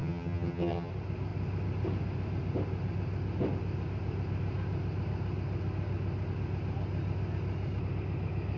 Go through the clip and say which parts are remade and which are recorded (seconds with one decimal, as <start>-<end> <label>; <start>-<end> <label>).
0.0-0.9 remade; 0.9-8.6 recorded